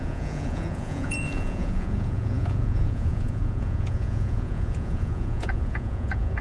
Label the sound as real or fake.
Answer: fake